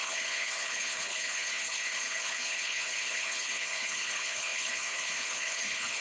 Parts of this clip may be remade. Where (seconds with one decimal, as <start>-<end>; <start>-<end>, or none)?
0.0-6.0